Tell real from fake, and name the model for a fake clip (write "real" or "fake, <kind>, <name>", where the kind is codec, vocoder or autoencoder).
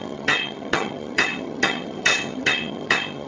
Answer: fake, vocoder, HiFi-GAN